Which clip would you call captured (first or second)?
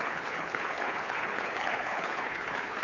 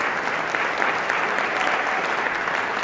second